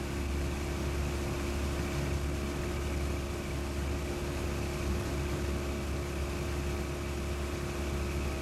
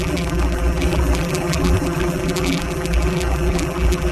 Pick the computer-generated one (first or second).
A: second